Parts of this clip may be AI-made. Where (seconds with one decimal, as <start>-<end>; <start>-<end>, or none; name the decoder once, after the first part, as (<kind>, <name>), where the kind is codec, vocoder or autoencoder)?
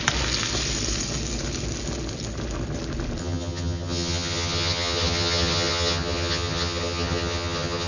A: 3.2-7.9 (vocoder, HiFi-GAN)